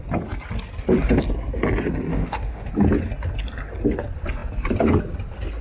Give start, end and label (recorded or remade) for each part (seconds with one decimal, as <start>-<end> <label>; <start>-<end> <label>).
0.0-2.1 recorded; 2.1-2.7 remade; 2.7-5.6 recorded